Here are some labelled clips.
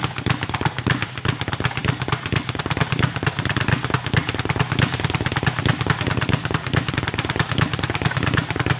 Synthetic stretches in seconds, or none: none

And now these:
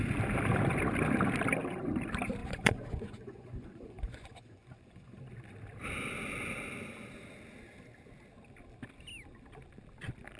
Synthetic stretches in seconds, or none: 2.4-5.2 (vocoder, Vocos)

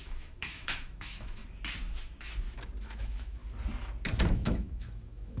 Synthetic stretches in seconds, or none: 0.0-1.4 (autoencoder, DAC-VAE); 2.8-3.4; 4.3-5.4